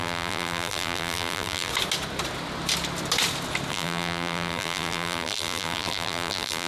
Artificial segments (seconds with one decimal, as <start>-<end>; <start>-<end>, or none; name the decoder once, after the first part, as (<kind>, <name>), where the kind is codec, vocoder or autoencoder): 0.0-1.7 (vocoder, BigVGAN v2); 3.7-6.7